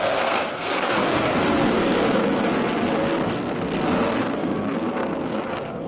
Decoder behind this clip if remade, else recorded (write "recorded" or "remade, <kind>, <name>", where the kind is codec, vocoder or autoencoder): remade, codec, SNAC